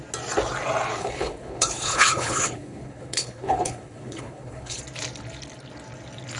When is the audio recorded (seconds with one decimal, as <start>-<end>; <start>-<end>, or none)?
0.0-1.0; 4.8-6.4

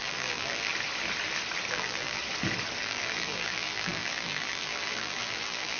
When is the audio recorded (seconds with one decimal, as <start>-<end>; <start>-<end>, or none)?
0.7-1.7; 2.2-2.8

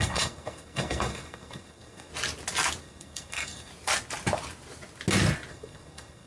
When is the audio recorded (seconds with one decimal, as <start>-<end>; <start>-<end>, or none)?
2.1-2.8; 3.7-5.5

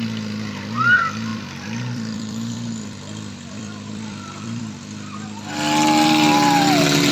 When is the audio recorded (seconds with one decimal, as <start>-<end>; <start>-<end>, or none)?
0.0-1.3; 4.6-7.1